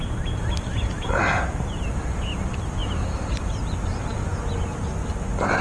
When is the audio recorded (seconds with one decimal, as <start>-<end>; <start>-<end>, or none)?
0.0-2.8; 3.6-5.6